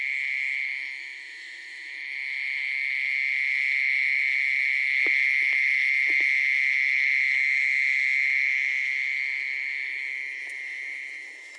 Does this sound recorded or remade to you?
remade